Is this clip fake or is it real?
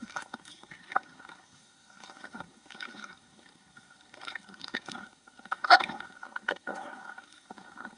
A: fake